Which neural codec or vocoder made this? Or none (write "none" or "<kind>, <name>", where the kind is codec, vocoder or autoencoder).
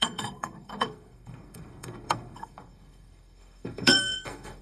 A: codec, SNAC